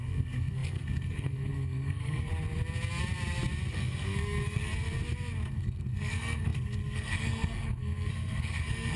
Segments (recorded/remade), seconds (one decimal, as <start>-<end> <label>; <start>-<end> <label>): 0.0-2.3 remade; 2.3-3.7 recorded; 3.7-4.7 remade; 4.7-5.5 recorded; 5.5-9.0 remade